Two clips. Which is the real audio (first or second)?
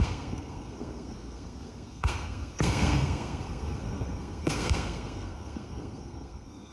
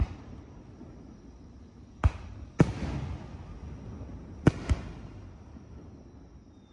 second